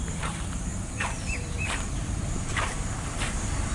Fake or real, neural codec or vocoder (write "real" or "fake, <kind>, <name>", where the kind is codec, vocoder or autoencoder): fake, vocoder, BigVGAN v2